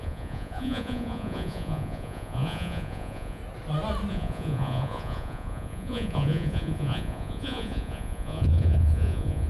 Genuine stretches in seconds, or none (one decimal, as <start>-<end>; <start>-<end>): 3.4-4.1